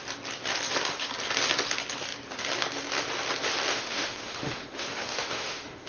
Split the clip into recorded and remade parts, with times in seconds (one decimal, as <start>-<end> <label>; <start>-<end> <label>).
0.0-3.7 recorded; 3.7-5.9 remade